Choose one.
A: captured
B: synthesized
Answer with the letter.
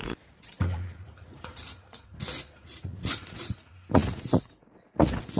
B